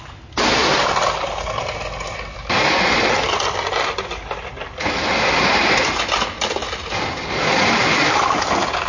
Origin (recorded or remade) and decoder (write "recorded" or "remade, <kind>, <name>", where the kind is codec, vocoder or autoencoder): recorded